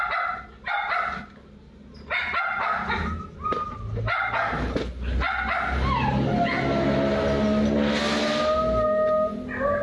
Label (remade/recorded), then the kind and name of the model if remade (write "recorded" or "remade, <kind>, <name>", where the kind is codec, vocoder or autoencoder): recorded